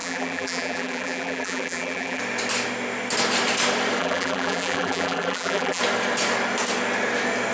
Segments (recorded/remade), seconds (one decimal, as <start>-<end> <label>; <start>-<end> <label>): 0.0-2.2 remade; 2.2-4.0 recorded; 4.0-5.8 remade; 5.8-7.5 recorded